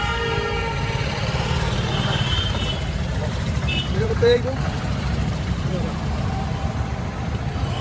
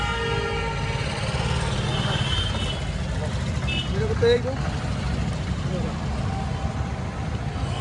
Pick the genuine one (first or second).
second